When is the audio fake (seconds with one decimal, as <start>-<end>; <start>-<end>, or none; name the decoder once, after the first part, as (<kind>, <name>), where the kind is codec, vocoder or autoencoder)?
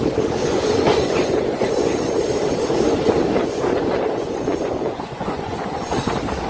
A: 0.4-1.9 (vocoder, Vocos); 3.4-5.9